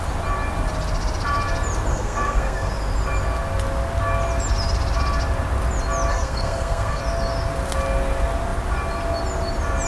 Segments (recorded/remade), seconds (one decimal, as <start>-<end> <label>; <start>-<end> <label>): 0.0-1.9 recorded; 1.9-2.7 remade; 2.7-6.1 recorded; 6.1-7.0 remade; 7.0-9.9 recorded